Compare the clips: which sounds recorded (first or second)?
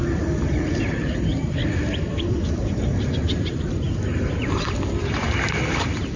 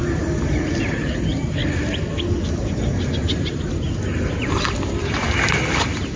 second